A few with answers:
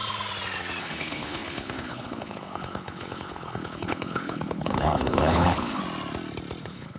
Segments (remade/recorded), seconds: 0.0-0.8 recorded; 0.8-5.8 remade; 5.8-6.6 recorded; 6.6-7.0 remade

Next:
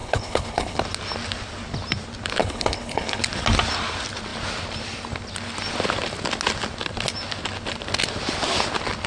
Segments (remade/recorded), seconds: 0.0-0.8 remade; 0.8-2.4 recorded; 2.4-3.2 remade; 3.2-9.1 recorded